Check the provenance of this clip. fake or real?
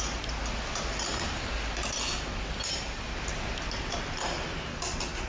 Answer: real